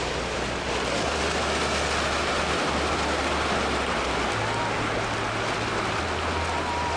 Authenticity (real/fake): real